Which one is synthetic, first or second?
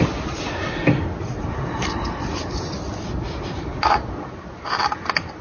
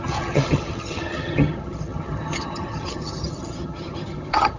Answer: second